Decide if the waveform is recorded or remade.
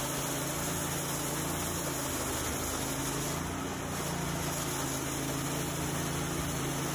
recorded